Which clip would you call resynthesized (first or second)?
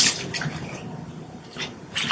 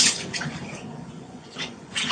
second